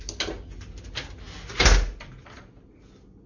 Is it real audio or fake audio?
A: real